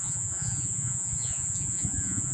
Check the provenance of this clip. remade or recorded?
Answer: remade